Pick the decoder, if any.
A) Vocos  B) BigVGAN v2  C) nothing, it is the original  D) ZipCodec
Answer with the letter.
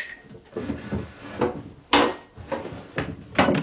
C